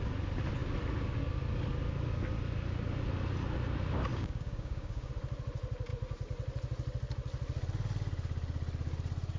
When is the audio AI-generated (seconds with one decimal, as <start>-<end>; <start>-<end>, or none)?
4.1-5.1